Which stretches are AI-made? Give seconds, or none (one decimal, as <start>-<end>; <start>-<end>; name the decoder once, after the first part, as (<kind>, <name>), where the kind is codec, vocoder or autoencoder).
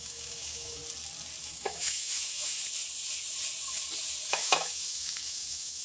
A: 0.0-0.8 (autoencoder, DAC-VAE); 1.4-2.6; 4.3-5.8